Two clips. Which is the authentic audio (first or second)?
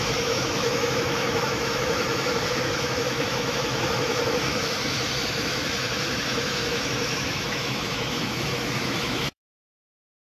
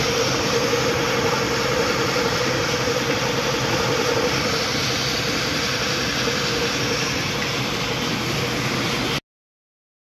second